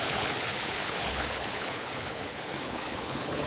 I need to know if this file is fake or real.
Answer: fake